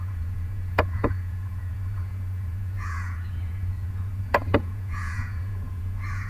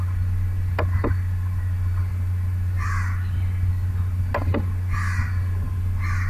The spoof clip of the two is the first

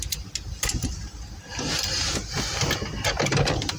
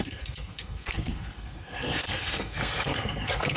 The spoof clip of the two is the second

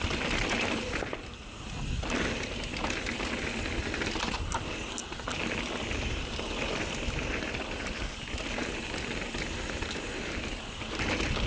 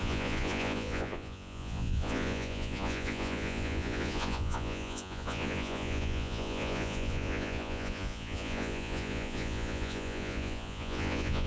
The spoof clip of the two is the second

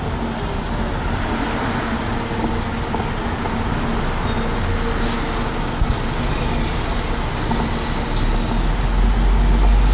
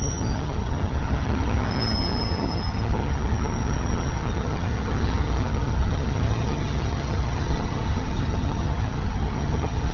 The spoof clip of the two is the second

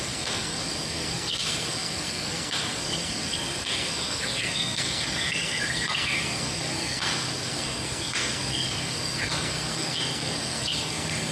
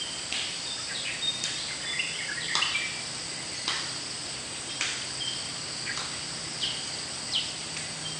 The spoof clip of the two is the first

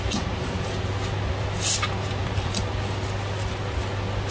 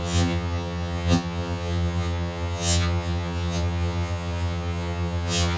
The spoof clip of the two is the second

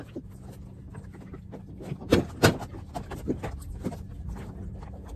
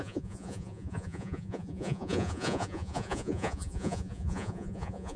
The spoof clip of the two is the second